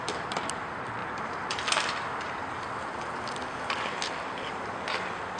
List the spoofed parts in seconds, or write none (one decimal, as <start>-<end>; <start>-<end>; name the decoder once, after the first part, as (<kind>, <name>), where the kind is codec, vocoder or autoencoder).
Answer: none